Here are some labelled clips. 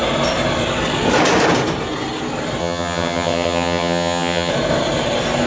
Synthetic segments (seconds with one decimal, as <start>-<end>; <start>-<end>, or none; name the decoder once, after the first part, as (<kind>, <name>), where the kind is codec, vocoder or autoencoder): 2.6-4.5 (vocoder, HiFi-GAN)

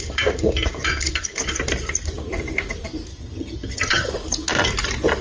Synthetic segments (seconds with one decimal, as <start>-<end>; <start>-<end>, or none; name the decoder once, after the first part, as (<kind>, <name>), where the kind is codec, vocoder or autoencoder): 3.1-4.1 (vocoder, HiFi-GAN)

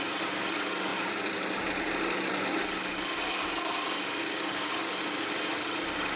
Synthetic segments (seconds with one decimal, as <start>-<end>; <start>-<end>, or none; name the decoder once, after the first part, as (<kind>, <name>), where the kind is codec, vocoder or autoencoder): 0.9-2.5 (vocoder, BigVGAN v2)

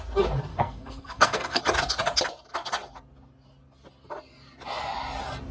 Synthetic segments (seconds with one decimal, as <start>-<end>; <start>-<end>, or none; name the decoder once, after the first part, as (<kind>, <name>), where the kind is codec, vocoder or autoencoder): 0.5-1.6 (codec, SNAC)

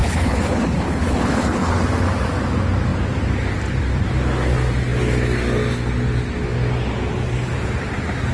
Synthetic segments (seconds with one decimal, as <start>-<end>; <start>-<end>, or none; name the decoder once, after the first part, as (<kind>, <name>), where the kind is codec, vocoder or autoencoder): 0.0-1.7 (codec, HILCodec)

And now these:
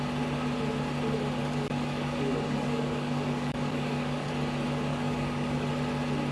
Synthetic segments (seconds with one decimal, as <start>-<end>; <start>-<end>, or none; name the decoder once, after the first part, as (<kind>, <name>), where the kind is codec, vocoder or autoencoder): 1.4-4.3 (codec, DAC); 4.9-5.7

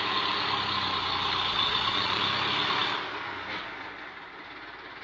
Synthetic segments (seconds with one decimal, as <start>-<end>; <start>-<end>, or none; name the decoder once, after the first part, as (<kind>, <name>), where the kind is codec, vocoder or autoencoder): 1.5-2.2 (vocoder, Vocos)